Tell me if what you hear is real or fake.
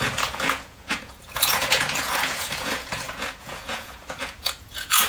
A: fake